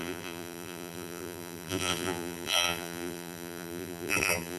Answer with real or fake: fake